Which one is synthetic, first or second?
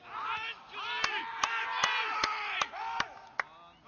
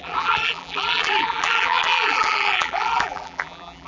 second